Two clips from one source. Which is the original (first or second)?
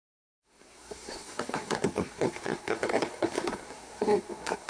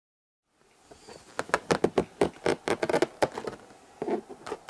second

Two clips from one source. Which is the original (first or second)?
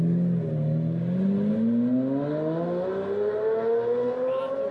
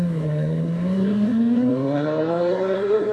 first